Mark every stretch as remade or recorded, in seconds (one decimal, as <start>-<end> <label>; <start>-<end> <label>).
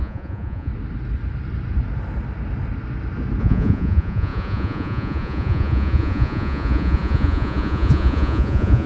0.0-0.7 remade; 0.7-3.4 recorded; 3.4-8.9 remade